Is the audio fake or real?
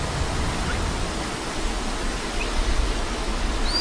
real